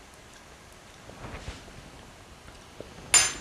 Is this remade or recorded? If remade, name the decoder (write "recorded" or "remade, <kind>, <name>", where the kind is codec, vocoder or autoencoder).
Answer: recorded